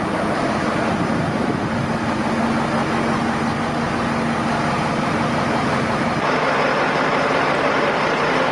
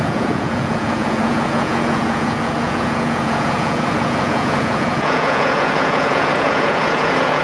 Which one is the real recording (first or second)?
first